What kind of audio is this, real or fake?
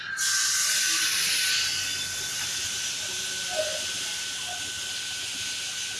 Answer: real